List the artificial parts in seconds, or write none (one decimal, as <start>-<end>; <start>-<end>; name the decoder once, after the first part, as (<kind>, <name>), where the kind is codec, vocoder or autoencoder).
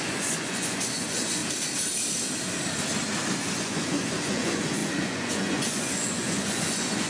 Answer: 0.0-1.4 (vocoder, Vocos); 3.6-7.1